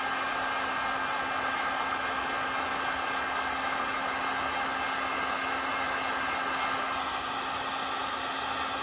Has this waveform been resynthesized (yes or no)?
no